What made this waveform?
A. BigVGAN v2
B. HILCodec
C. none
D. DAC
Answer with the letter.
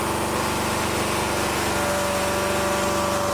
C